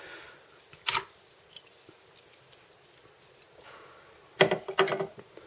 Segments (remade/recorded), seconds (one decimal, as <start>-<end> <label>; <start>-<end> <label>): 0.0-5.5 recorded